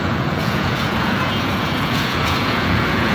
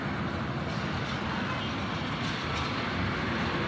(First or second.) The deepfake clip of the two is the first